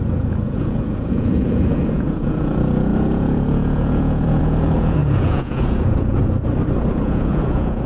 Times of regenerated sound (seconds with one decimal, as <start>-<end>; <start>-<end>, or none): 0.0-6.2; 6.9-7.9